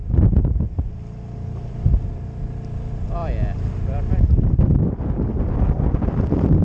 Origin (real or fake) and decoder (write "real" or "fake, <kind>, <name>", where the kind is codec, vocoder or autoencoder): real